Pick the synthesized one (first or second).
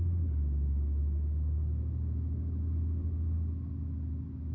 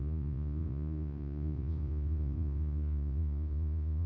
second